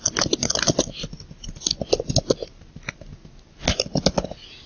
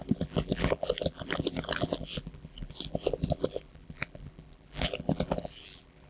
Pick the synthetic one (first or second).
second